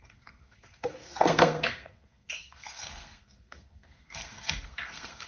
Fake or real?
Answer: fake